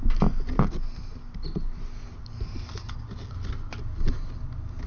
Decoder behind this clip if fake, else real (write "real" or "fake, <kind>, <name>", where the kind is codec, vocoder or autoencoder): real